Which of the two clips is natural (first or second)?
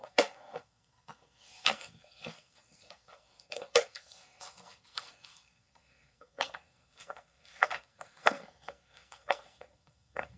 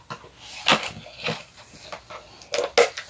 second